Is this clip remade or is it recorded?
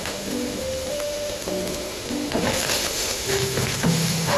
remade